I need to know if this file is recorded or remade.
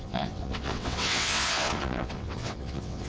remade